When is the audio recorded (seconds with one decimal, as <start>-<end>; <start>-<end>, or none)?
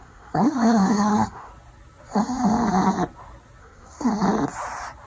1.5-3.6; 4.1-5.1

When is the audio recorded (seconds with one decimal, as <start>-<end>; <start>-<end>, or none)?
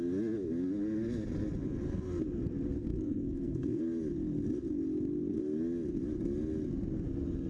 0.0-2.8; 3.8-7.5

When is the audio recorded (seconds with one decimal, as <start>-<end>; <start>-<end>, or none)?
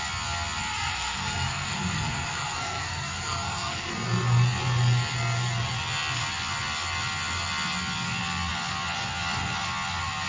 0.0-0.7; 3.9-10.3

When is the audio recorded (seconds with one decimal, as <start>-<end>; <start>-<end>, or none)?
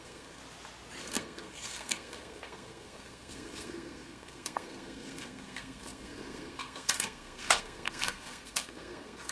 0.4-1.0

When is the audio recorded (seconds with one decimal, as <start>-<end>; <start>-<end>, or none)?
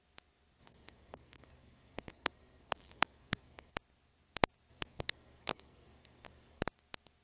0.0-0.6; 3.7-4.7; 6.6-7.2